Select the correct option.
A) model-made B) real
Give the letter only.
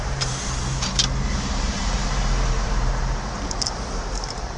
A